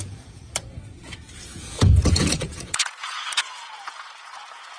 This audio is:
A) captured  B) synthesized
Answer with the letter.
B